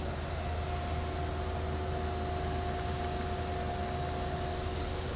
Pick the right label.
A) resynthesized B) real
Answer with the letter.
B